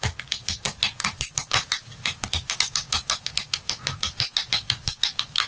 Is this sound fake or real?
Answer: fake